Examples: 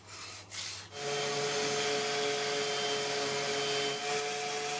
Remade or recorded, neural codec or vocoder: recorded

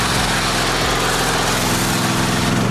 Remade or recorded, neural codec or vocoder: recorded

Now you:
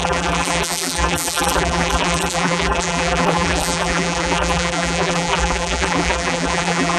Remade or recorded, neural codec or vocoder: remade, vocoder, BigVGAN v2